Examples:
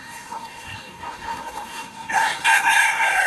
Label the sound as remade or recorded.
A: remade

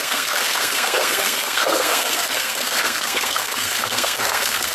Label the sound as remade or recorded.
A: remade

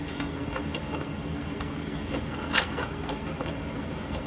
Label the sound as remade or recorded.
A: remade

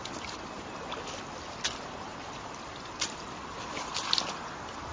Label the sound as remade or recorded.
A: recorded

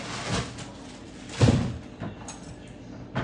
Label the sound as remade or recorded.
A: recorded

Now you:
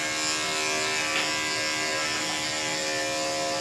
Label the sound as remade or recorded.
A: recorded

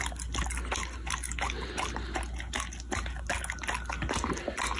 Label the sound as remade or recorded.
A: recorded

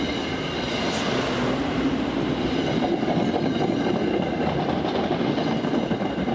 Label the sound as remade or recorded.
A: recorded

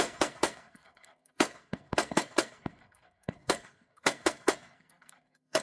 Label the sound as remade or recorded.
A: remade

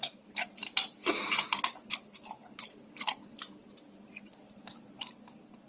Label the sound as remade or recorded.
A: recorded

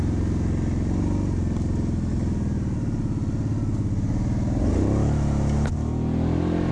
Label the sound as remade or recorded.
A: recorded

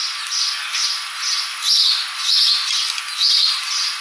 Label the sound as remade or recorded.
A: recorded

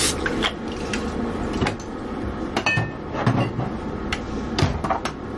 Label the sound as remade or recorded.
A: recorded